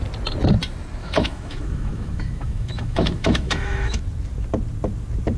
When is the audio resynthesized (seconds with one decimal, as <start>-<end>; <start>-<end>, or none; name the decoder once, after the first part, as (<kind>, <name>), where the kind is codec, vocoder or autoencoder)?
1.0-4.0 (autoencoder, DAC-VAE)